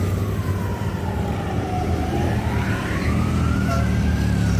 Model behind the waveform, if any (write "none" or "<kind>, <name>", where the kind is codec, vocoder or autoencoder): vocoder, BigVGAN v2